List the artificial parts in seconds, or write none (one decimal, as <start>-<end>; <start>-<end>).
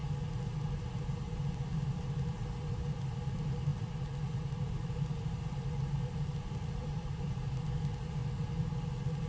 2.4-8.2; 8.9-9.3